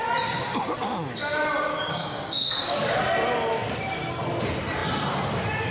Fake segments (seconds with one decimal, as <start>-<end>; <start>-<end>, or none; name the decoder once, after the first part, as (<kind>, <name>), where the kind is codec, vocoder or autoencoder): 1.7-3.0 (codec, DAC); 3.5-4.1